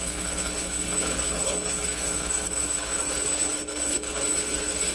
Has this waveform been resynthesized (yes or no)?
yes